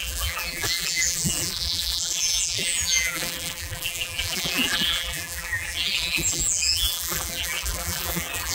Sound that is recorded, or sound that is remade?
remade